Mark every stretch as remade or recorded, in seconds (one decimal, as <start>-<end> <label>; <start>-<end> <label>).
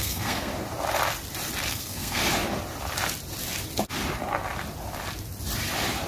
0.0-0.5 remade; 0.5-1.7 recorded; 1.7-2.2 remade; 2.2-6.1 recorded